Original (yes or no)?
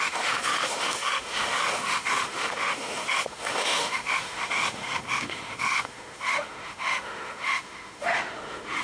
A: no